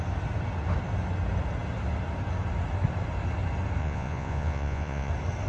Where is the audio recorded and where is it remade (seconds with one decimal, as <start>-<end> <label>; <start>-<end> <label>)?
0.0-3.8 recorded; 3.8-5.1 remade; 5.1-5.5 recorded